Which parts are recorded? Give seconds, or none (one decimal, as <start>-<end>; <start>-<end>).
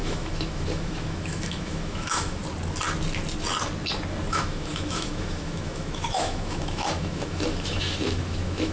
2.4-4.3